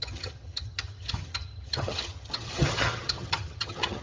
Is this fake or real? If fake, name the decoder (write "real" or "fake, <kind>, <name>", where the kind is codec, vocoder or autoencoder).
fake, vocoder, HiFi-GAN